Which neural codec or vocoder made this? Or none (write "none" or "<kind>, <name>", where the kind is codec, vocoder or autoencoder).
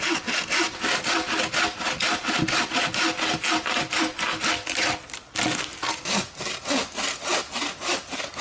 none